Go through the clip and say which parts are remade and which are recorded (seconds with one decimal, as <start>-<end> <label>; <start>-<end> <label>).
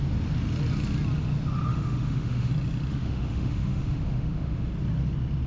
0.0-1.7 recorded; 1.7-2.5 remade; 2.5-2.9 recorded; 2.9-4.7 remade; 4.7-5.5 recorded